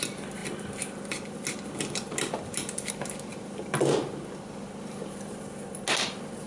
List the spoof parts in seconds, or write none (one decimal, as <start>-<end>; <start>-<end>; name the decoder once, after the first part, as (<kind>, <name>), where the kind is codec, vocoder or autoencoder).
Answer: none